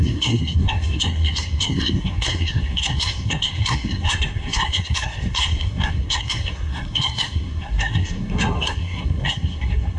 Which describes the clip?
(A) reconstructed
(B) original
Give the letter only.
A